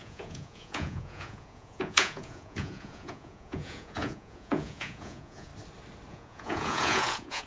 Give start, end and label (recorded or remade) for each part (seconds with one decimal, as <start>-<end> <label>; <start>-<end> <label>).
0.0-5.5 remade; 5.5-6.1 recorded; 6.1-7.5 remade